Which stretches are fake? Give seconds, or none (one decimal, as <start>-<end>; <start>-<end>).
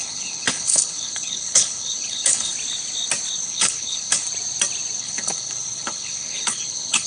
0.0-2.5; 3.4-4.2; 5.0-7.1